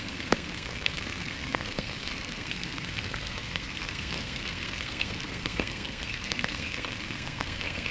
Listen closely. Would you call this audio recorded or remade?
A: remade